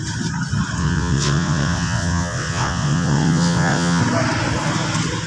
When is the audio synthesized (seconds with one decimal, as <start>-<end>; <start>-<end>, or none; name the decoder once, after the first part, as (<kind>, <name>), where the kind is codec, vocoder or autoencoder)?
0.8-4.0 (vocoder, WaveNeXt)